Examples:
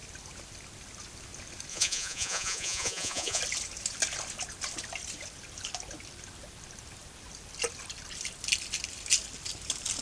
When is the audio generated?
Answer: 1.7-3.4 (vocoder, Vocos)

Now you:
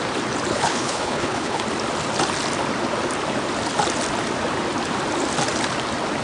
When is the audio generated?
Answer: 0.5-1.6 (codec, HILCodec)

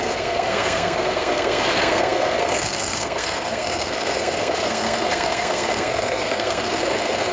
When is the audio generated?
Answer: 0.0-7.3 (codec, SNAC)

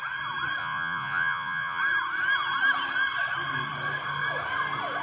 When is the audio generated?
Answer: 0.6-1.8 (vocoder, Vocos)